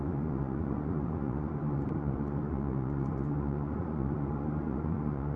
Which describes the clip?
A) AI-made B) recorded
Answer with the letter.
A